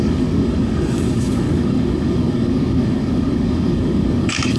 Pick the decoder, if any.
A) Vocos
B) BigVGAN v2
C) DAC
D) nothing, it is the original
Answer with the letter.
C